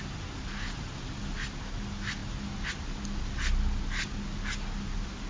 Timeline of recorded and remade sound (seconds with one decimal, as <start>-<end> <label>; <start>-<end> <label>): 0.0-5.3 recorded